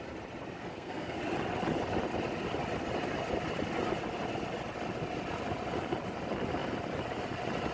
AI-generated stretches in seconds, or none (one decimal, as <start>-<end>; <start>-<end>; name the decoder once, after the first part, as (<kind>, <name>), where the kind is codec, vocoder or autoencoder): 0.6-1.2 (codec, SNAC)